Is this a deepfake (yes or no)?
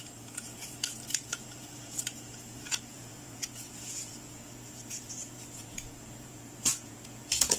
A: yes